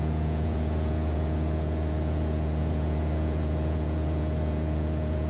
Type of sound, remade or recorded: remade